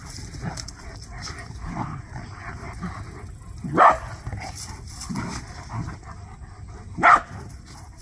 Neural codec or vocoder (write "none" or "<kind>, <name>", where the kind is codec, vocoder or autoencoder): none